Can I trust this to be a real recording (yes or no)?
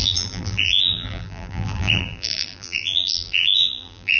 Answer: no